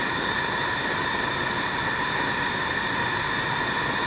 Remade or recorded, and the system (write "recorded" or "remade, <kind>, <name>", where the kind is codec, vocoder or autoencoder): recorded